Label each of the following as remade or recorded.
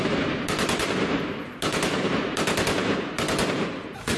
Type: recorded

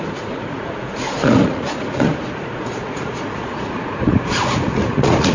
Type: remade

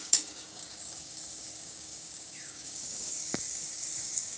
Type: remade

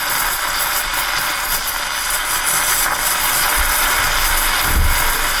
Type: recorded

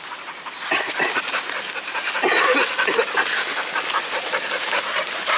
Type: recorded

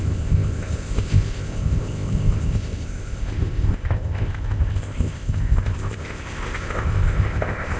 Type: remade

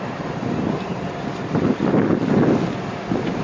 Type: recorded